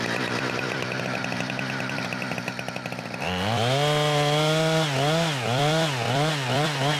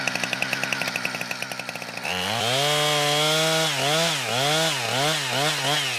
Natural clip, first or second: second